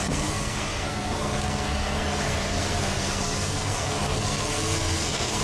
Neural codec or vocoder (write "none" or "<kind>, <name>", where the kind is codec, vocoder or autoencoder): codec, SNAC